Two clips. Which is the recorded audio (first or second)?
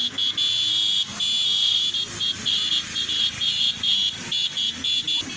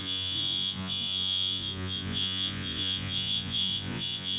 first